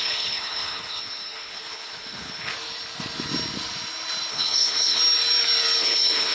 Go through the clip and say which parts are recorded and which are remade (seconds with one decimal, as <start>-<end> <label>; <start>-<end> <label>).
0.0-2.5 remade; 2.5-4.3 recorded; 4.3-5.0 remade; 5.0-5.8 recorded; 5.8-6.3 remade